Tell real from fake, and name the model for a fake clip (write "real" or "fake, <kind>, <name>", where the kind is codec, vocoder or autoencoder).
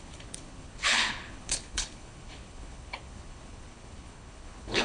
fake, codec, HILCodec